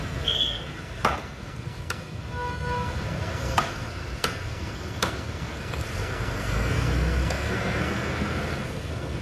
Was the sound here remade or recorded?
remade